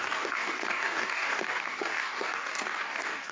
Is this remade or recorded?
remade